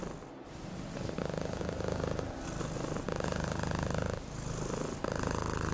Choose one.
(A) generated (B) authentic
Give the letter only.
B